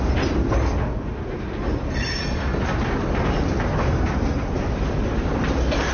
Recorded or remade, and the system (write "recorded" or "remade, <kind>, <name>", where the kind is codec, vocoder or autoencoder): recorded